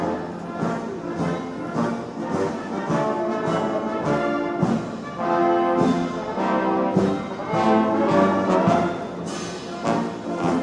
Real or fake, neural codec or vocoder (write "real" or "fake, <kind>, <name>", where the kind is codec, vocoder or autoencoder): real